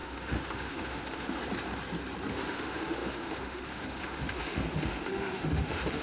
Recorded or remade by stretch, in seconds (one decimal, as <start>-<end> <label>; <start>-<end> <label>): 0.0-1.4 remade; 1.4-2.3 recorded; 2.3-6.0 remade

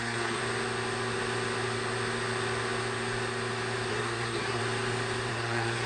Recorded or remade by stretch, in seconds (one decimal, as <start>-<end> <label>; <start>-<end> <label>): 0.0-0.4 remade; 0.4-3.9 recorded; 3.9-4.6 remade; 4.6-5.3 recorded; 5.3-5.9 remade

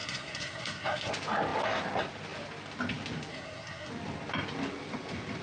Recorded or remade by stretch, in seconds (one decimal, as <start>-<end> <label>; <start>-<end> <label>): 0.0-1.1 remade; 1.1-3.3 recorded; 3.3-3.9 remade; 3.9-5.4 recorded

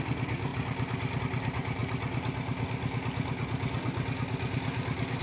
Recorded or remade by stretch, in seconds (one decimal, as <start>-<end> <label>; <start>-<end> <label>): 0.0-0.5 recorded; 0.5-1.2 remade; 1.2-5.2 recorded

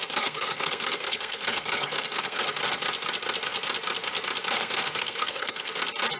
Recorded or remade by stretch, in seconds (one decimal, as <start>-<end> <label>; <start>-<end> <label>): 0.0-2.4 remade; 2.4-4.6 recorded; 4.6-5.7 remade; 5.7-6.2 recorded

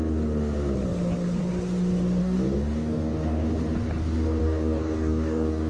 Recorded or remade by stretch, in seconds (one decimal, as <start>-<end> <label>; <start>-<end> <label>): 0.0-2.2 recorded; 2.2-3.5 remade; 3.5-4.4 recorded; 4.4-5.7 remade

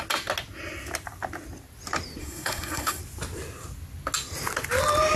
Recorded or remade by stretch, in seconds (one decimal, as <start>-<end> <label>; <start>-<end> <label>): 0.0-2.2 recorded; 2.2-3.0 remade; 3.0-5.2 recorded

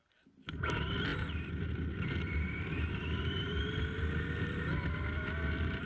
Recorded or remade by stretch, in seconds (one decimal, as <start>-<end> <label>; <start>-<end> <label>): 0.0-3.0 recorded; 3.0-3.6 remade; 3.6-5.9 recorded